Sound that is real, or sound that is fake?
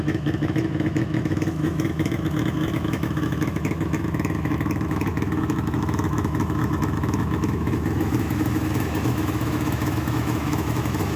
fake